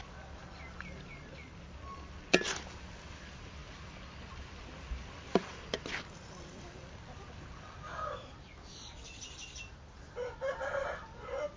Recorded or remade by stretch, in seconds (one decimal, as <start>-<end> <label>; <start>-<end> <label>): 0.0-11.6 recorded